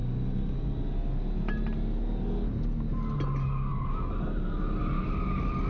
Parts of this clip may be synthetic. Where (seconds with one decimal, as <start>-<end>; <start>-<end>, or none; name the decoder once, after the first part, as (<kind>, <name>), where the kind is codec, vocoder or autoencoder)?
none